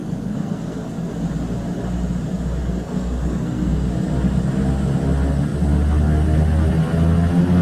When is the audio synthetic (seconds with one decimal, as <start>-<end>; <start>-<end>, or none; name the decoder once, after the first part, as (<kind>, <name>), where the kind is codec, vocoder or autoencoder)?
0.0-1.1 (codec, SNAC); 2.6-3.9